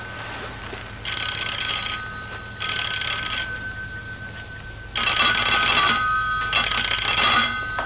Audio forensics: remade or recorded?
recorded